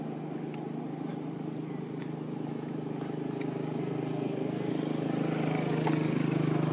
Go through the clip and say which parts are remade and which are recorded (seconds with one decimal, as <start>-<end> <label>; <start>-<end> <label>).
0.0-3.8 recorded; 3.8-4.7 remade; 4.7-6.7 recorded